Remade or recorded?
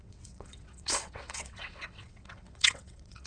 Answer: remade